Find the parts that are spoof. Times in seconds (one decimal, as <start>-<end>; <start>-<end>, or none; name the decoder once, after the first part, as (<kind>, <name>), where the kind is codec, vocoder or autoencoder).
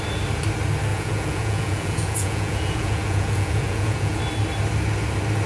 0.9-4.2 (vocoder, Vocos)